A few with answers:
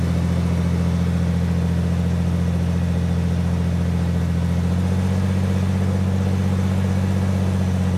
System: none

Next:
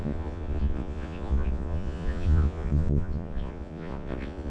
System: vocoder, Vocos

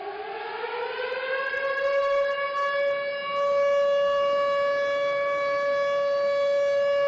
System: none